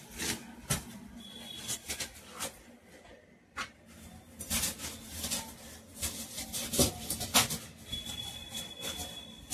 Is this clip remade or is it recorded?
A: recorded